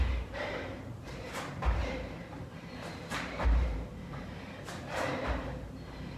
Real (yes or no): no